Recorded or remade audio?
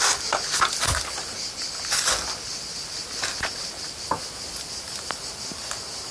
recorded